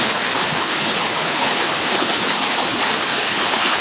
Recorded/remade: remade